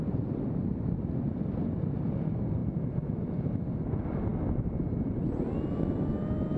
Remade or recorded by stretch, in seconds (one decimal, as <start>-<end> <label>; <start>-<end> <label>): 0.0-6.6 recorded

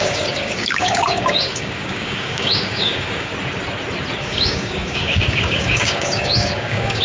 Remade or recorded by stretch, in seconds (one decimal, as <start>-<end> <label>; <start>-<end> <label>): 0.0-3.3 remade; 3.3-4.2 recorded; 4.2-7.0 remade

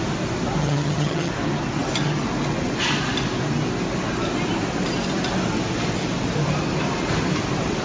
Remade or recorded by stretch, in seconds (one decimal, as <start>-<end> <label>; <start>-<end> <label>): 0.0-0.6 recorded; 0.6-1.3 remade; 1.3-7.8 recorded

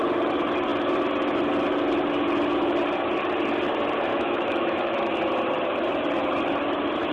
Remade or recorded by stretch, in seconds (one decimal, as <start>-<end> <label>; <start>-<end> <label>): 0.0-4.1 recorded; 4.1-5.1 remade; 5.1-7.1 recorded

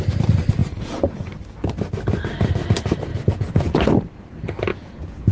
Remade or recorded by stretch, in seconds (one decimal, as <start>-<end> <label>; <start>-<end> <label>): 0.0-0.6 recorded; 0.6-1.3 remade; 1.3-3.1 recorded; 3.1-3.8 remade; 3.8-4.7 recorded; 4.7-5.3 remade

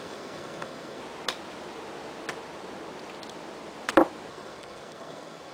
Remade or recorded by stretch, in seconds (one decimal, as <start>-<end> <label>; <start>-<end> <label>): 0.0-1.0 remade; 1.0-4.3 recorded; 4.3-5.5 remade